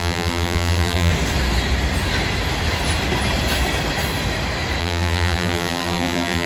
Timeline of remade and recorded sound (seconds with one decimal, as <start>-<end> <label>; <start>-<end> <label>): 0.0-1.1 remade; 1.1-4.8 recorded; 4.8-6.5 remade